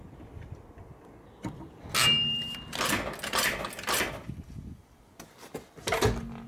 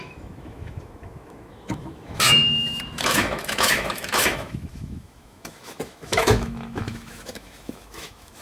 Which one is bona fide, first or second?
first